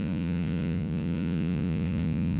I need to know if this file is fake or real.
fake